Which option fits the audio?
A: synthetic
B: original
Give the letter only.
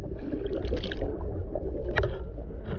B